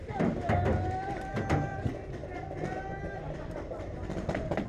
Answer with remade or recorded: remade